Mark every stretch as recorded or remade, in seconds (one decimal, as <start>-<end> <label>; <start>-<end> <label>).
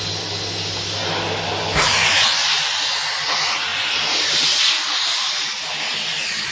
0.0-6.5 recorded